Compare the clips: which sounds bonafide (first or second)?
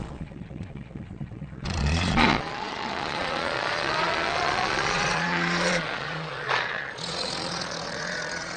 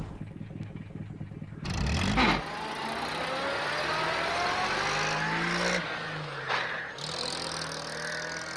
second